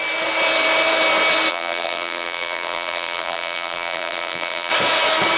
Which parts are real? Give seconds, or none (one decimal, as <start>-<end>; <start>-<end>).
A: 0.0-1.5; 4.7-5.4